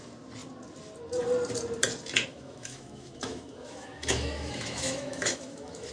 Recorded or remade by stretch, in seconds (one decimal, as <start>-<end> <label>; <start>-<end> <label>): 0.0-2.3 recorded; 2.3-5.9 remade